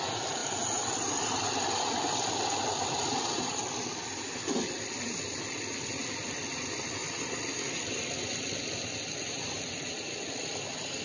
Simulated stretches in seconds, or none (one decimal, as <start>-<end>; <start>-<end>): none